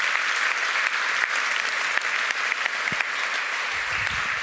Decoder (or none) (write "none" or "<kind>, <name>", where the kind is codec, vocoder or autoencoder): none